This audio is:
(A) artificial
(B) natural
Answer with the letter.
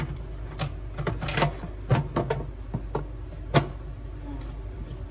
B